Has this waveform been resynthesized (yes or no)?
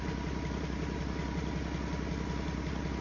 no